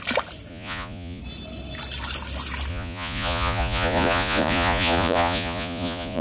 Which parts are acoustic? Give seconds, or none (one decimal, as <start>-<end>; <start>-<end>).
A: 0.0-0.5; 1.2-2.7